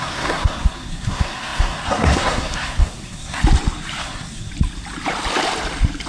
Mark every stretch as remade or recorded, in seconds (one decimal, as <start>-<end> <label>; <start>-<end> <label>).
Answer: 0.0-3.4 remade; 3.4-4.0 recorded; 4.0-4.5 remade; 4.5-6.1 recorded

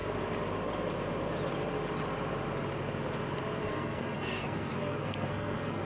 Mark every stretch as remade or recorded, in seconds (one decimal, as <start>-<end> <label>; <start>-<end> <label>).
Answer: 0.0-3.6 recorded; 3.6-5.8 remade